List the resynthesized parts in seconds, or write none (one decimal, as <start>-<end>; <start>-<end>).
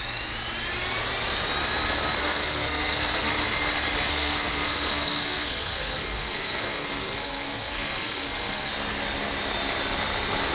2.2-3.3; 4.1-8.7